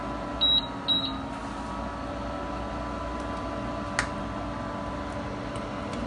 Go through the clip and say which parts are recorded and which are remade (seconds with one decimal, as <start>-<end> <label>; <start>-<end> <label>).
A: 0.0-6.1 recorded